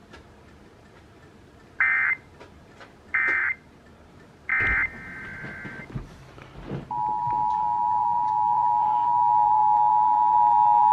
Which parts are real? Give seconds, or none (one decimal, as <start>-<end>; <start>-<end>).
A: 4.5-7.5